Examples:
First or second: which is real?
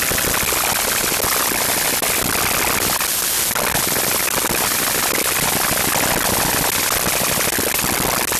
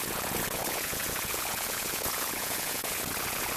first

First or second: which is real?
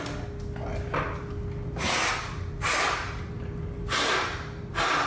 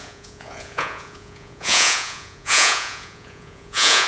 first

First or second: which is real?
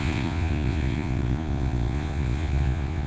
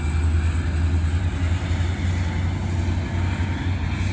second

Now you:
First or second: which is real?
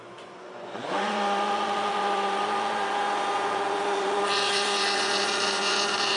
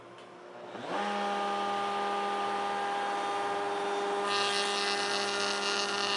second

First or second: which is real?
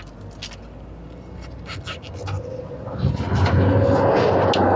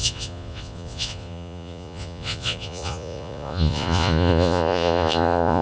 first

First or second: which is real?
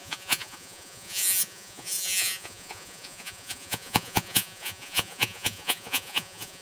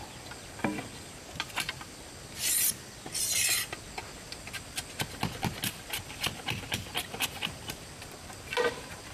second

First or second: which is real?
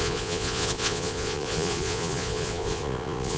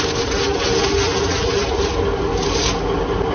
second